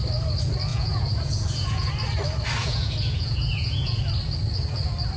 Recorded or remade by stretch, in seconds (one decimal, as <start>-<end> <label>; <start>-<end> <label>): 0.0-0.7 recorded; 0.7-1.9 remade; 1.9-2.6 recorded; 2.6-4.0 remade; 4.0-5.2 recorded